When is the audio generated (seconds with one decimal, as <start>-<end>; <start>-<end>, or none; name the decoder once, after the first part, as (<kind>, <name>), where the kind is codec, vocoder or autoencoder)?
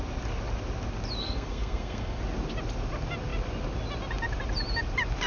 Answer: 1.2-2.2 (codec, SNAC)